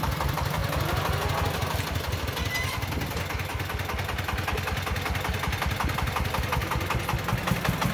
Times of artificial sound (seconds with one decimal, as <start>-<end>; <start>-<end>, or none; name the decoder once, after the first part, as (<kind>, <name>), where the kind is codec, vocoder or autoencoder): none